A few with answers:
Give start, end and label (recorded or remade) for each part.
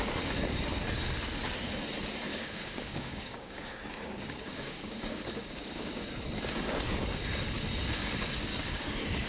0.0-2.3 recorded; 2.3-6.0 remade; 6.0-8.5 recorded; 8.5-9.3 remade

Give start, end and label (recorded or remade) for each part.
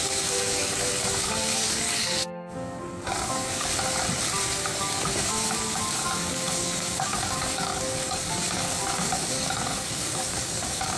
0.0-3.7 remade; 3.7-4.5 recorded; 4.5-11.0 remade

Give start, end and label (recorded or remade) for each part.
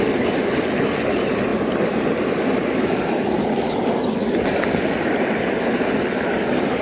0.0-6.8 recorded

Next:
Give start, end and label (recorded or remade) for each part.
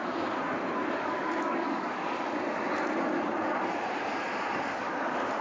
0.0-1.0 recorded; 1.0-2.1 remade; 2.1-4.4 recorded; 4.4-5.4 remade